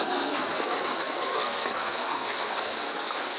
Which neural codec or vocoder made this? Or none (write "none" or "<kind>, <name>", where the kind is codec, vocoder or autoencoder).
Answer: codec, SNAC